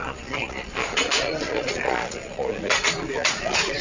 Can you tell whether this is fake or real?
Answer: fake